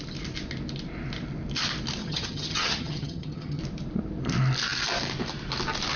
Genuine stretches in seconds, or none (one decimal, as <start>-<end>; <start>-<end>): 0.0-2.0; 3.6-6.0